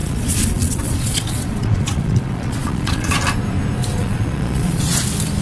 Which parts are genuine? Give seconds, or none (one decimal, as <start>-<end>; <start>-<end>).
3.2-4.0; 5.0-5.4